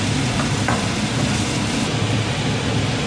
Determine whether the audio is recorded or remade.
recorded